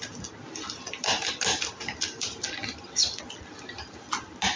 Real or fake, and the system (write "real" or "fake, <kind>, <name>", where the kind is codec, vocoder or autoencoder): real